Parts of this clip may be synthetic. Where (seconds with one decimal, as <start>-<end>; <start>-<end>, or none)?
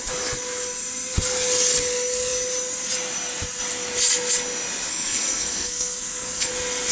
4.9-6.5